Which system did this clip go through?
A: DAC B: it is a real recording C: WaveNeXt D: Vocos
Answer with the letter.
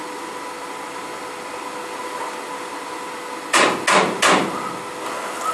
B